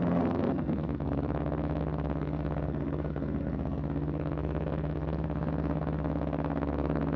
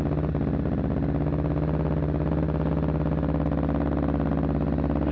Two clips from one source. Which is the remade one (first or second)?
first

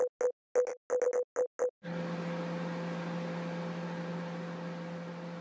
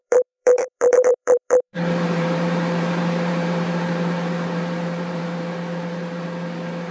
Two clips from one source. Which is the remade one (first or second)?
second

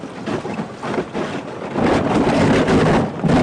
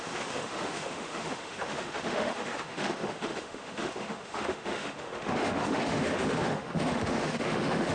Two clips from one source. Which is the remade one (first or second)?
second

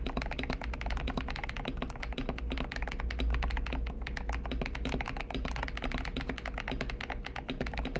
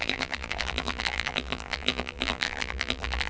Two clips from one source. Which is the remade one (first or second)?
second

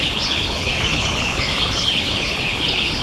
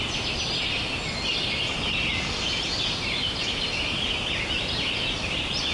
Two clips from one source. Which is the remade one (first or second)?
first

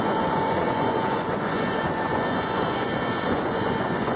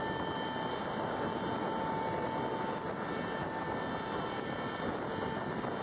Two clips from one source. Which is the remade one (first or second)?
first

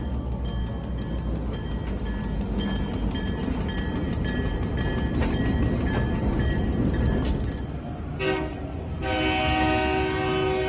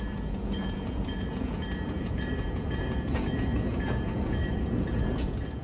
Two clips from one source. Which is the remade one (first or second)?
second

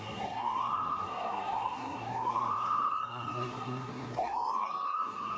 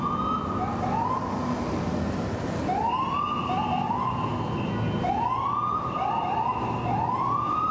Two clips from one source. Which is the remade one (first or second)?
first